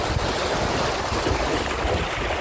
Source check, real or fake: real